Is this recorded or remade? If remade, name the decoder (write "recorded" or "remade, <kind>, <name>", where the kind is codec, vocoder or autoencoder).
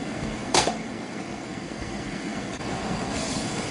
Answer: remade, codec, SNAC